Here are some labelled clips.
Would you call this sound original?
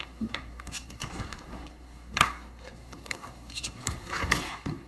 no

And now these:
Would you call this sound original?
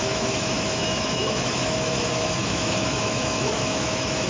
no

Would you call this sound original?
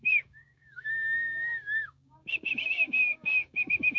no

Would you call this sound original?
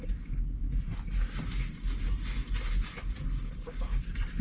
yes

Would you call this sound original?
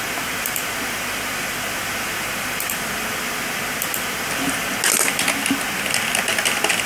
yes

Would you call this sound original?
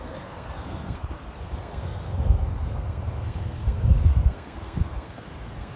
no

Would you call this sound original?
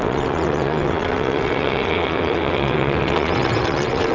no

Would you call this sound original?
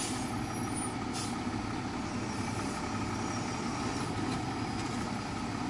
yes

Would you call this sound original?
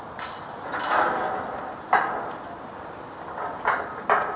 yes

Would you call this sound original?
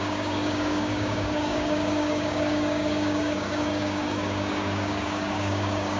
no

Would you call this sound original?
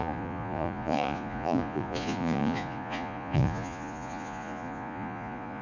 no